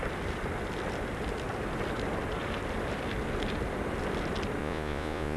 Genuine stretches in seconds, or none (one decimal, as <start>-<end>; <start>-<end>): 0.0-4.6